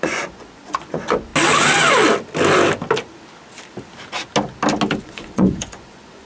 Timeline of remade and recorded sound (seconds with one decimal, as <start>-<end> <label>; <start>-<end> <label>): 0.0-1.3 remade; 1.3-5.0 recorded; 5.0-6.2 remade